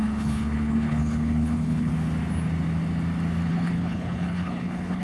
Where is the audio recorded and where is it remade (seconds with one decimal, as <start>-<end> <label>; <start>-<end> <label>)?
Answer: 0.0-1.9 remade; 1.9-3.5 recorded; 3.5-5.0 remade